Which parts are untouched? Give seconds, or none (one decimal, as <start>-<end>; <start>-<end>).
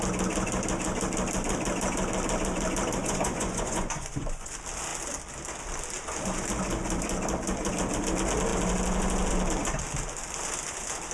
0.0-3.0; 4.5-11.1